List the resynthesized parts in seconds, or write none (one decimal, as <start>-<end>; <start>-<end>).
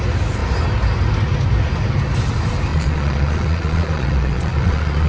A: 2.7-5.1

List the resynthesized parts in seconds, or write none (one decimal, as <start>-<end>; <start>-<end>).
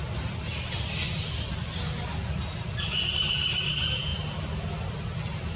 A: none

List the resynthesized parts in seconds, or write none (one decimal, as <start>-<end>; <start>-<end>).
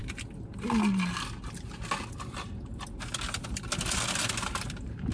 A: none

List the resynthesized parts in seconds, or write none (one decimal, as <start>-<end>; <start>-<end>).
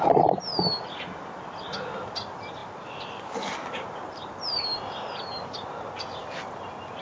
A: none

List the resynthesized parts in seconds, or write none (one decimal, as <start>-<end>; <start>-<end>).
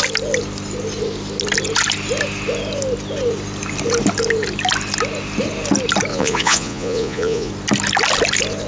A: 6.1-7.5